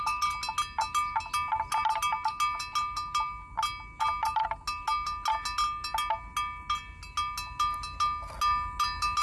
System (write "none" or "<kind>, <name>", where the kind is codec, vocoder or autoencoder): none